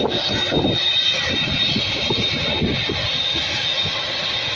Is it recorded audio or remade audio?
recorded